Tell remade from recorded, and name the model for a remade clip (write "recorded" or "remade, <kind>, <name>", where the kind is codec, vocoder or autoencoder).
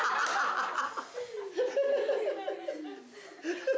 recorded